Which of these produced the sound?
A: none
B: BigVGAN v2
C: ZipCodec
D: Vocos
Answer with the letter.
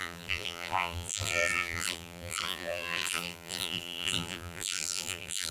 B